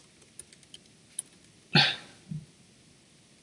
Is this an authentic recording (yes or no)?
yes